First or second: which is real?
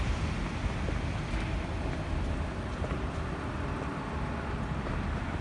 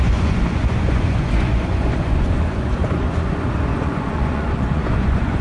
first